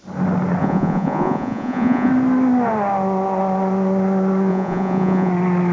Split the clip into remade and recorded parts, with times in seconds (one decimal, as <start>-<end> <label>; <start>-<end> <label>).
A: 0.0-0.6 recorded; 0.6-2.1 remade; 2.1-4.5 recorded; 4.5-5.3 remade; 5.3-5.7 recorded

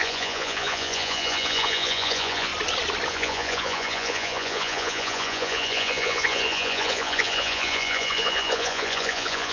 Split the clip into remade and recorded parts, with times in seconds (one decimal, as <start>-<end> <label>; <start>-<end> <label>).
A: 0.0-2.5 remade; 2.5-3.1 recorded; 3.1-9.5 remade